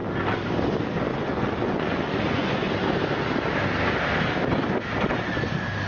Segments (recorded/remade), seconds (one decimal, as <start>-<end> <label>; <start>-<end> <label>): 0.0-1.1 recorded; 1.1-2.7 remade; 2.7-5.9 recorded